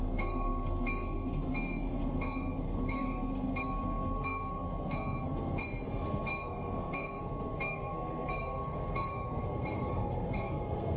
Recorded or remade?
remade